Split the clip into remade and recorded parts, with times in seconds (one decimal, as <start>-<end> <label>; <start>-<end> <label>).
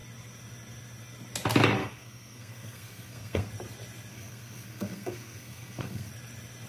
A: 0.0-1.8 recorded; 1.8-3.5 remade; 3.5-4.1 recorded; 4.1-6.1 remade; 6.1-6.7 recorded